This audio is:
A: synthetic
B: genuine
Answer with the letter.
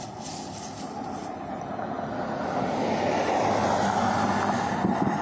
B